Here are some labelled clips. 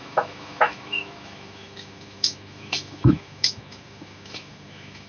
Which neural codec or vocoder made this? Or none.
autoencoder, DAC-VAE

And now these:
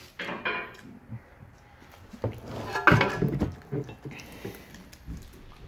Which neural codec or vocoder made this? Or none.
none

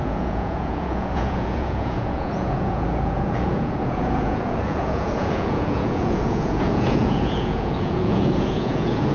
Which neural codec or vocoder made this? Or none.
vocoder, Vocos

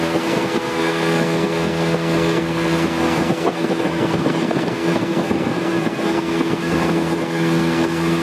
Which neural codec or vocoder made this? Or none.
codec, SNAC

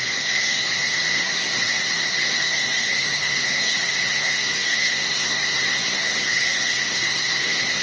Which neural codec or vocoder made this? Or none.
codec, SNAC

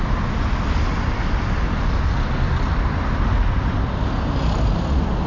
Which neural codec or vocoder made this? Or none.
none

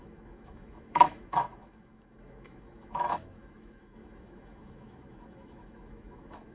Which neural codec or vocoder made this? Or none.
autoencoder, DAC-VAE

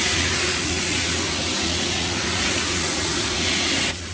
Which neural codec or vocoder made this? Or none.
vocoder, Vocos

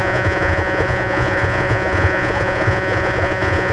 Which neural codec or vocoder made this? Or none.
vocoder, Vocos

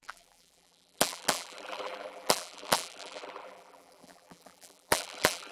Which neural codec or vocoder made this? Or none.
vocoder, BigVGAN v2